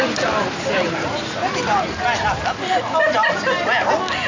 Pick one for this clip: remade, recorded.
recorded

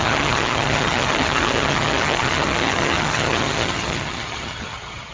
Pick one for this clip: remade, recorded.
remade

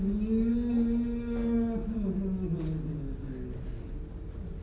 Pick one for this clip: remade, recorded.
recorded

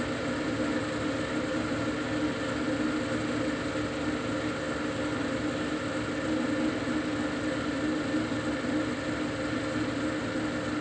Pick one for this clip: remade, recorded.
recorded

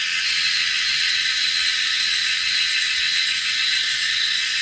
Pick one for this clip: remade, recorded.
remade